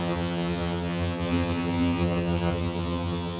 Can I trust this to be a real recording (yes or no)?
no